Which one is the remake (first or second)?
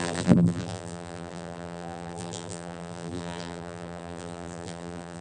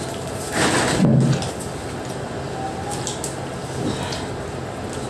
first